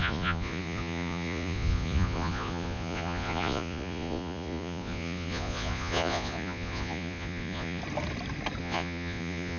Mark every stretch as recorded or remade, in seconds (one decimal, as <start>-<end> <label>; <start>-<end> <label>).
0.0-7.8 remade; 7.8-8.6 recorded; 8.6-9.6 remade